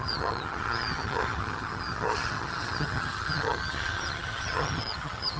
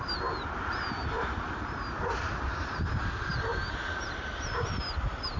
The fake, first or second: first